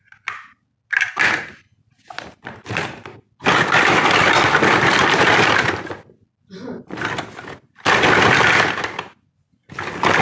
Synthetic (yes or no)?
no